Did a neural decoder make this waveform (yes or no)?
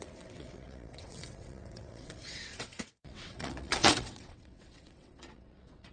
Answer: yes